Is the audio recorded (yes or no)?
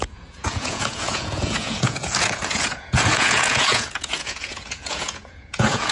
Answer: no